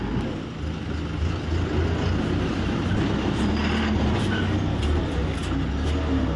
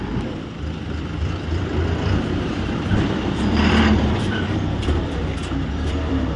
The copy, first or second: second